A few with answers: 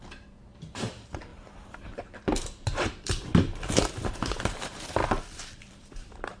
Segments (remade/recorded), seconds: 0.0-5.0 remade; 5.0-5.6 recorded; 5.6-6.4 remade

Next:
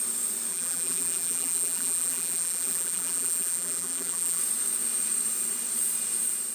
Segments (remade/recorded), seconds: 0.0-0.5 recorded; 0.5-4.4 remade; 4.4-6.5 recorded

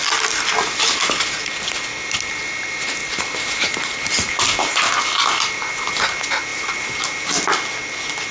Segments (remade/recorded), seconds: 0.0-0.8 recorded; 0.8-1.8 remade; 1.8-3.0 recorded; 3.0-5.0 remade; 5.0-6.5 recorded; 6.5-7.5 remade; 7.5-8.3 recorded

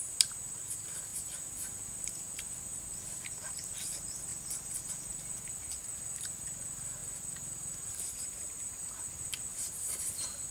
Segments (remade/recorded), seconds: 0.0-2.7 recorded; 2.7-3.9 remade; 3.9-10.5 recorded

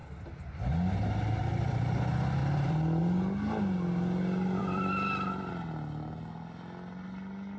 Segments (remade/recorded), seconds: 0.0-1.4 recorded; 1.4-1.9 remade; 1.9-2.4 recorded; 2.4-3.0 remade; 3.0-4.6 recorded; 4.6-5.5 remade; 5.5-7.6 recorded